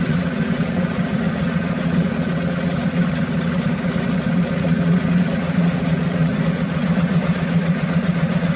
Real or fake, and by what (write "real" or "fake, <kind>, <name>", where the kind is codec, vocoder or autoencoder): fake, vocoder, Vocos